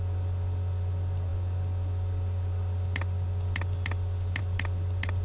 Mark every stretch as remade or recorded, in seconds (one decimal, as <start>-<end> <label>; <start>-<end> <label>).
0.0-5.2 recorded